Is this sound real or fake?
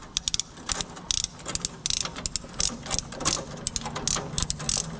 real